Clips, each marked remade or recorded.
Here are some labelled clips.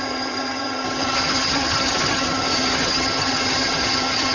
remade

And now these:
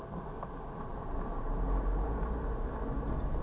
recorded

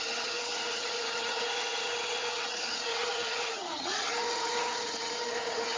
remade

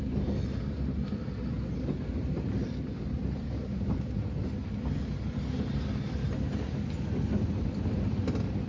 recorded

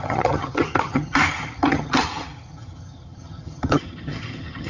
remade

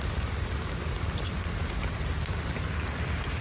recorded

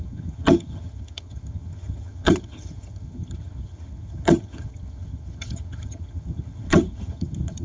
remade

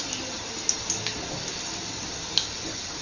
recorded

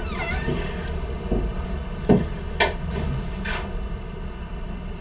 recorded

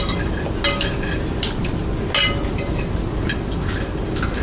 recorded